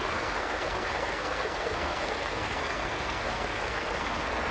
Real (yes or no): no